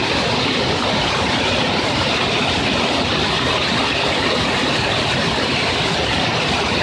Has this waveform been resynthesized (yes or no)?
no